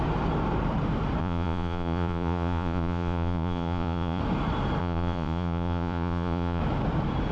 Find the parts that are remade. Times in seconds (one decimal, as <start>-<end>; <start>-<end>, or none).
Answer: 1.2-4.2; 4.8-6.6